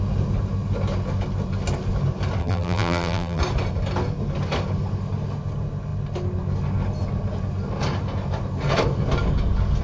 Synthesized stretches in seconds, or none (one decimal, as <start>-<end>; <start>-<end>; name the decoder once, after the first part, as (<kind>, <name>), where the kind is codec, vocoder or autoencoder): 2.4-3.4 (vocoder, BigVGAN v2)